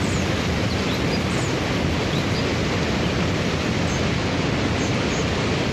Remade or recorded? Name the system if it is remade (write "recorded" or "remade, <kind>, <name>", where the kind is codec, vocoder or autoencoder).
recorded